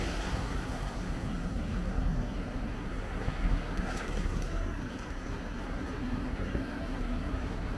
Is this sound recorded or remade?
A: remade